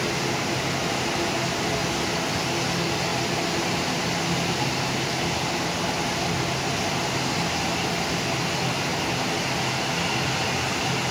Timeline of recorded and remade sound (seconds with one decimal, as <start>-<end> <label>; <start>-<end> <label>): 0.0-11.1 recorded